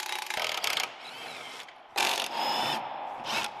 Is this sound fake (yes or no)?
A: no